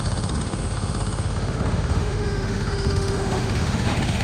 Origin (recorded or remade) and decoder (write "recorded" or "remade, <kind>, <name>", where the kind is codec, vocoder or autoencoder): remade, autoencoder, DAC-VAE